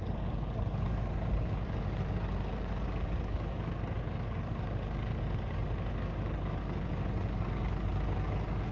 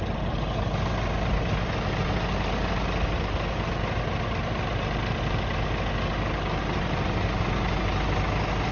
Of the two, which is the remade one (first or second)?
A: first